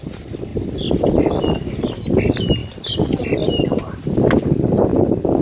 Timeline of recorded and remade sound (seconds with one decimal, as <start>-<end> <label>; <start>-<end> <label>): 0.0-2.6 recorded; 2.6-5.4 remade